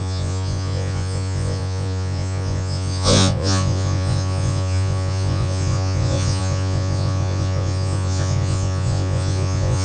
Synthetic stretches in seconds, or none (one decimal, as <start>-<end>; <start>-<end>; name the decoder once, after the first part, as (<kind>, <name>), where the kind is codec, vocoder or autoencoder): 0.0-9.8 (vocoder, Vocos)